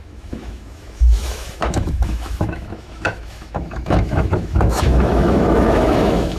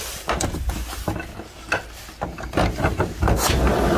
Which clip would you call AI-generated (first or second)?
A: first